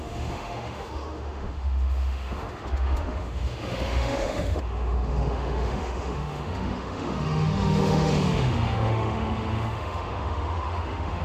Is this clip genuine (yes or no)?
no